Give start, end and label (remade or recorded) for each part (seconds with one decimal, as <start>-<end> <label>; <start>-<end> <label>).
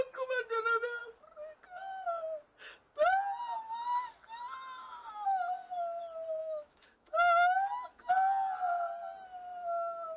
0.0-6.4 recorded; 6.4-8.1 remade; 8.1-10.2 recorded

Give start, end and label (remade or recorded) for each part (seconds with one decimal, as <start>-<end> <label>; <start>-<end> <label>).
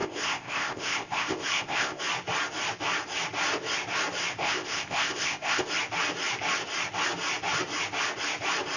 0.0-2.0 remade; 2.0-4.4 recorded; 4.4-5.7 remade; 5.7-8.8 recorded